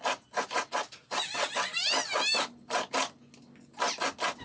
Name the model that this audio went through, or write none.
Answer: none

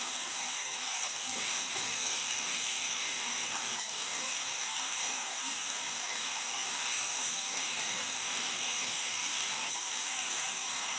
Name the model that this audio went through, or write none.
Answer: codec, DAC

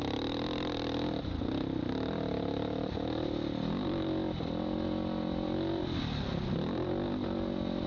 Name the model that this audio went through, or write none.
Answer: none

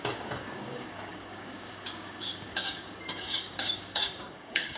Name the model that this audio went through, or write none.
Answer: codec, DAC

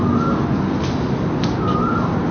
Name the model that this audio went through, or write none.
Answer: none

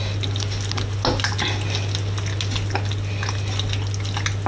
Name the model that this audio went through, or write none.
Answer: none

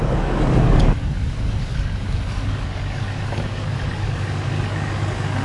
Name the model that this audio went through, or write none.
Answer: codec, DAC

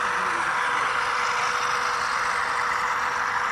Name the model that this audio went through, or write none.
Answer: none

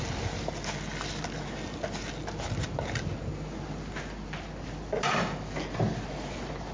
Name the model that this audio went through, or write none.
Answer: none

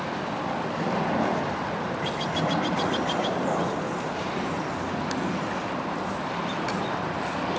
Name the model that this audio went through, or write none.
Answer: none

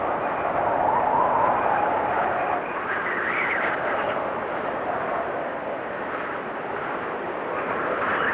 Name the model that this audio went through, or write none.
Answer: none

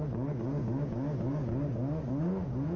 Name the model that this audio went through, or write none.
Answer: codec, DAC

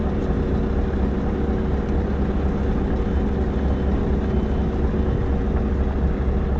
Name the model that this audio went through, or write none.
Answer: none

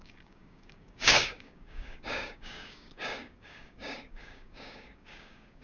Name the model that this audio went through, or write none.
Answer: codec, DAC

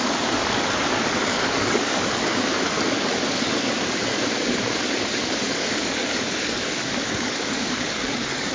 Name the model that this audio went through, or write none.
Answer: codec, DAC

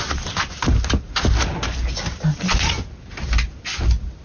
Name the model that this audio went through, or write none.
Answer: none